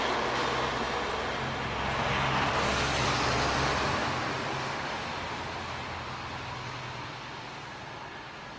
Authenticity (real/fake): real